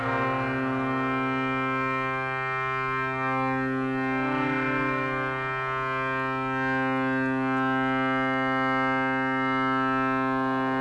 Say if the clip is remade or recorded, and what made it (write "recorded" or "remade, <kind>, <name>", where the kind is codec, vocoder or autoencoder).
recorded